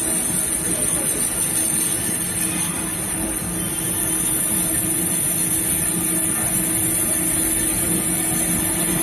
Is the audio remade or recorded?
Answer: recorded